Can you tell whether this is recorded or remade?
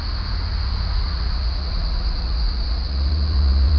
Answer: remade